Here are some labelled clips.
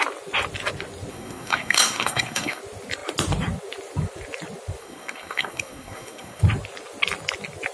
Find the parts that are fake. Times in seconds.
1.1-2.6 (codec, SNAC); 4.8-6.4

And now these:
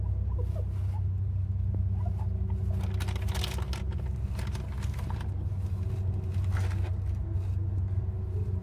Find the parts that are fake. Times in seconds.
none

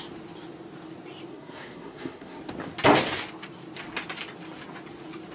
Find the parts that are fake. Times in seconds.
1.3-2.4 (codec, SNAC)

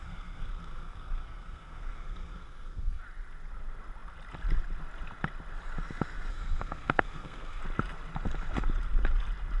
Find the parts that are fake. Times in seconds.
0.0-3.0 (codec, SNAC); 6.3-7.6

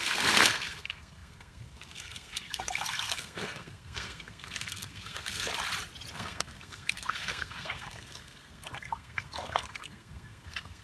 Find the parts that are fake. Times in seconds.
0.0-5.5 (codec, SNAC); 6.1-10.8

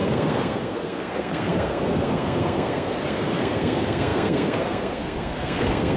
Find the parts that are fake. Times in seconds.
0.0-6.0 (codec, SNAC)

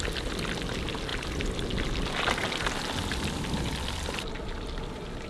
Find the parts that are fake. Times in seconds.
none

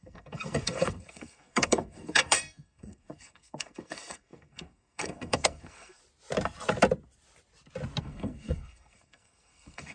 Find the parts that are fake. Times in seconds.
0.0-6.0 (codec, SNAC); 8.0-9.9